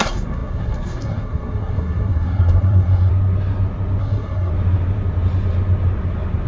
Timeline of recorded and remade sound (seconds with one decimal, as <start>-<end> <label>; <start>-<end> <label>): 0.0-3.1 remade; 3.1-4.0 recorded; 4.0-4.5 remade; 4.5-6.5 recorded